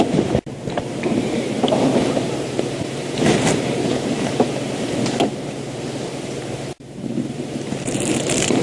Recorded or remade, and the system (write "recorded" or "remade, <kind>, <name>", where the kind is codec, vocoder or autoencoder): remade, vocoder, BigVGAN v2